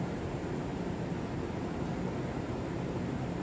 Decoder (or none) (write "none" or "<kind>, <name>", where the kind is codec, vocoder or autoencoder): vocoder, BigVGAN v2